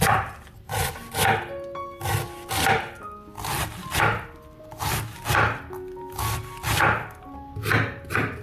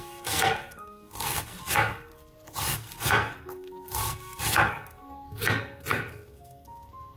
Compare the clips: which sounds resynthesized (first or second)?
second